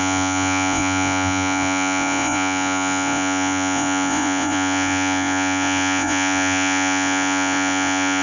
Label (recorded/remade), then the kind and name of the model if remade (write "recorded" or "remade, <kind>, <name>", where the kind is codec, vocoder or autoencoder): remade, vocoder, Vocos